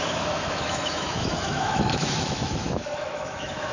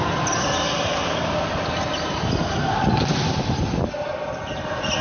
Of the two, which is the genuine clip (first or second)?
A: second